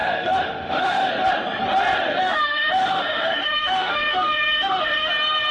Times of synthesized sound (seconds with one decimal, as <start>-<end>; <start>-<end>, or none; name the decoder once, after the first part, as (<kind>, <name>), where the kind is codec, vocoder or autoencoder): 0.0-1.1 (autoencoder, DAC-VAE); 2.2-5.1